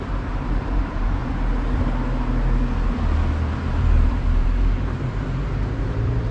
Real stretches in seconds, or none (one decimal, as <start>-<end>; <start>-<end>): 1.2-3.8